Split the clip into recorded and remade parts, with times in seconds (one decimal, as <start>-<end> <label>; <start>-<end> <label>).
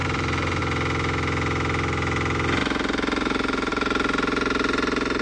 0.0-0.6 remade; 0.6-5.2 recorded